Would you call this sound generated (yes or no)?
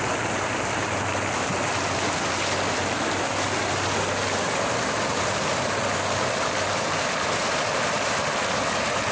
no